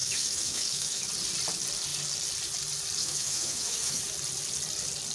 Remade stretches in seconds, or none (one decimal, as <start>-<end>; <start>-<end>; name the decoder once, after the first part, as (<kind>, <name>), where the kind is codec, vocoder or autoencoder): 0.0-1.1 (autoencoder, DAC-VAE); 3.0-4.0